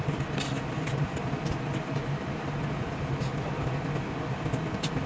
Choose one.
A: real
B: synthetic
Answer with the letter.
A